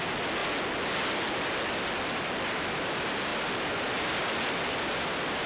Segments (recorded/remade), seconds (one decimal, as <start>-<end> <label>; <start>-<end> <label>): 0.0-5.5 recorded